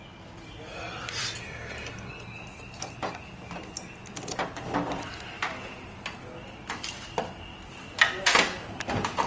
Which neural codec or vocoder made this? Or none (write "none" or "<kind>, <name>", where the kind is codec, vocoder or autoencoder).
none